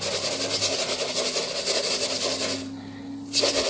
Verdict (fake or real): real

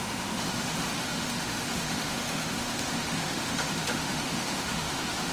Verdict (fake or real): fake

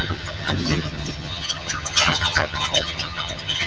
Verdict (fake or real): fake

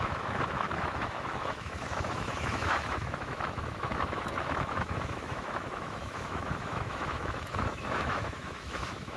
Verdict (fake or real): fake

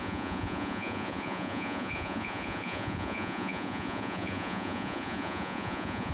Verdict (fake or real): fake